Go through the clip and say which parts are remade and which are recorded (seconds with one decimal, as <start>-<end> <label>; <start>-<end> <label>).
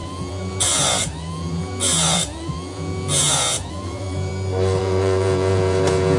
0.0-4.3 remade; 4.3-4.8 recorded; 4.8-6.2 remade